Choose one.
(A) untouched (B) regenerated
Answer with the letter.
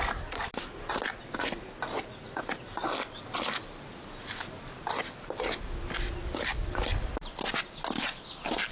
A